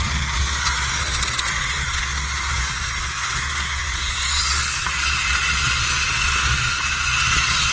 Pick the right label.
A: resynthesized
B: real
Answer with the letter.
A